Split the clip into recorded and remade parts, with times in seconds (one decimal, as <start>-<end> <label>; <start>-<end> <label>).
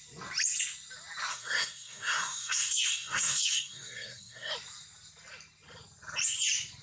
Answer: 0.0-1.3 recorded; 1.3-4.5 remade; 4.5-6.8 recorded